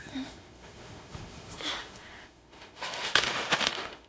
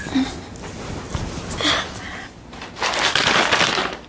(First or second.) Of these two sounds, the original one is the second